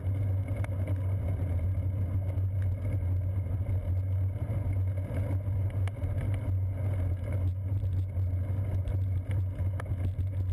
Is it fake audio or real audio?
real